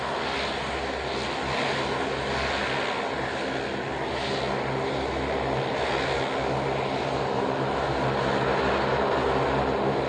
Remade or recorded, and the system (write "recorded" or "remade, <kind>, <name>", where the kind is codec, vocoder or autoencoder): recorded